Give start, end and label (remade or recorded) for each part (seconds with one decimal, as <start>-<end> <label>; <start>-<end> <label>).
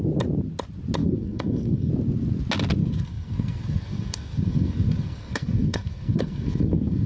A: 0.0-1.0 recorded; 1.0-1.9 remade; 1.9-2.8 recorded; 2.8-7.1 remade